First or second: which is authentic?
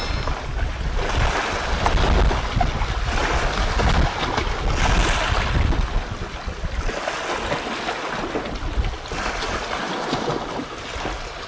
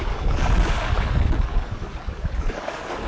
first